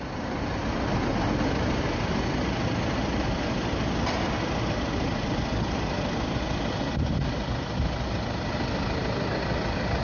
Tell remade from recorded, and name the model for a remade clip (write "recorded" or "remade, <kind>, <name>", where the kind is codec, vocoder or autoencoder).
recorded